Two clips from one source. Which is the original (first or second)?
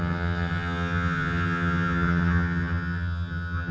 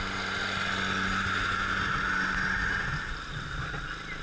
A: second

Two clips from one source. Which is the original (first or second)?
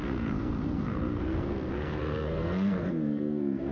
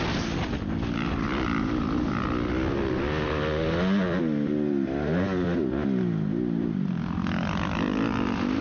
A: second